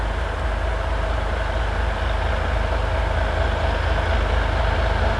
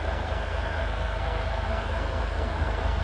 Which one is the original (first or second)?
first